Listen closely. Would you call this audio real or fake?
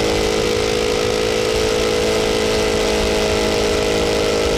real